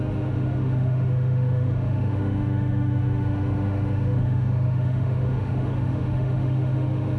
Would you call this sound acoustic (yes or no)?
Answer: no